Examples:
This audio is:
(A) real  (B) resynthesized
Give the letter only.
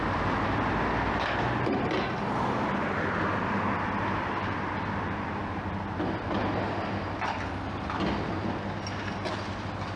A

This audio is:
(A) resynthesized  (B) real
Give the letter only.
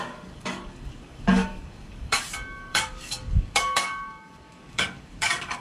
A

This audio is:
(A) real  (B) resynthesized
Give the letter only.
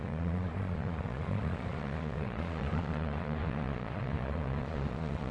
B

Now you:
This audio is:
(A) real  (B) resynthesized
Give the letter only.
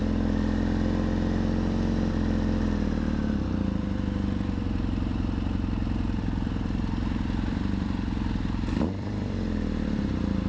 B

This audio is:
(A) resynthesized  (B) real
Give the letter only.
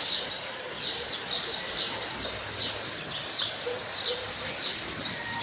B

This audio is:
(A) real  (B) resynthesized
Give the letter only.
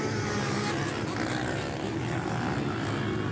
A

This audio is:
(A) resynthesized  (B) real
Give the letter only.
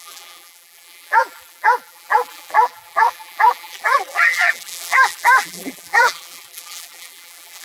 A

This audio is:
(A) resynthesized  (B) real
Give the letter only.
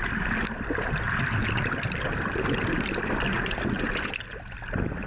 B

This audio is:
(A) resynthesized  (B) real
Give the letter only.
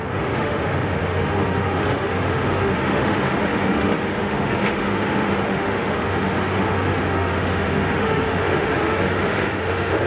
A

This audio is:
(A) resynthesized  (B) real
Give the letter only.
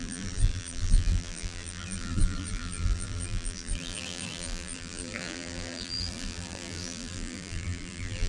A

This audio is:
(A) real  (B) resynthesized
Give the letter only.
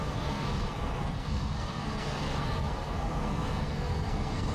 B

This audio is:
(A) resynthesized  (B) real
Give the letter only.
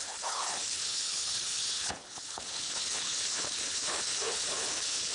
A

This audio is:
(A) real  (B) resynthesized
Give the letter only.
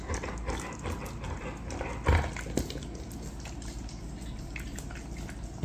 A